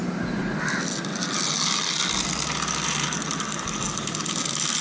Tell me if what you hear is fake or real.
real